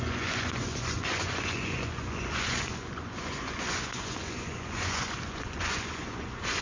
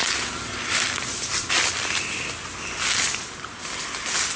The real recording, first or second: second